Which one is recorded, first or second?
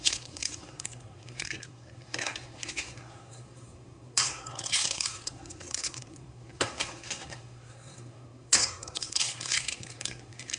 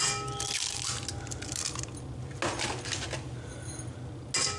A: second